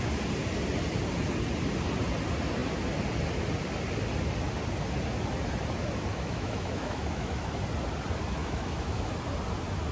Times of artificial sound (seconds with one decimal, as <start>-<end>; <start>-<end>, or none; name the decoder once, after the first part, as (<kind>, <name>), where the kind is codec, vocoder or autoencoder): 6.1-7.5 (autoencoder, DAC-VAE); 8.4-9.1